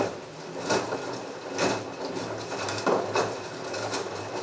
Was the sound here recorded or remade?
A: recorded